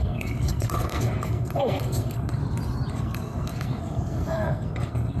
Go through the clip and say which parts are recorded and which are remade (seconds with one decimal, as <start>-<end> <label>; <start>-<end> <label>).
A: 0.0-2.4 remade; 2.4-2.9 recorded; 2.9-5.2 remade